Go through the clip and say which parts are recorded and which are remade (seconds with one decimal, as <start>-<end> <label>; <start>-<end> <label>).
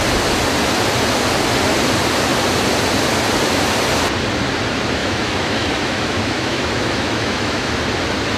0.0-5.0 recorded; 5.0-7.7 remade; 7.7-8.4 recorded